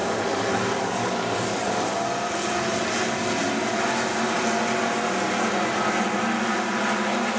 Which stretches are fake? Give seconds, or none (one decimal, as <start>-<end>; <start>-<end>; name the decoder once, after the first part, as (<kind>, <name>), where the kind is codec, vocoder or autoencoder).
0.0-1.7 (codec, DAC)